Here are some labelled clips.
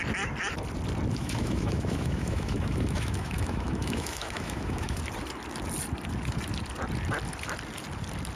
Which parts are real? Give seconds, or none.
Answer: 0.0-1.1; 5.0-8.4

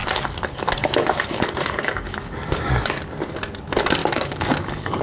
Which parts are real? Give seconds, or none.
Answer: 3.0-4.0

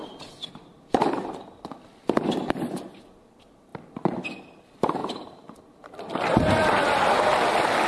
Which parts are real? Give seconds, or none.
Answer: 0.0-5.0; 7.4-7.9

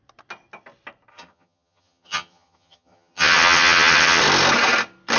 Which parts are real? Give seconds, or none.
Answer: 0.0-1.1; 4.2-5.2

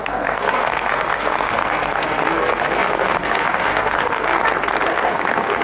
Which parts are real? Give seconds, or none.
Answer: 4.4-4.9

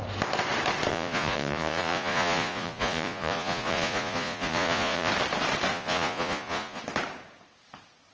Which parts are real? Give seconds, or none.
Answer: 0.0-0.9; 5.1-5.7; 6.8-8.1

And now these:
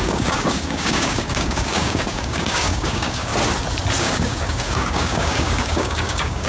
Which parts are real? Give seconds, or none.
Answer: 3.3-4.0

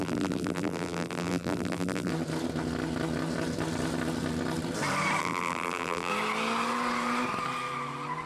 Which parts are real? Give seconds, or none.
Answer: 2.1-5.2; 6.1-8.3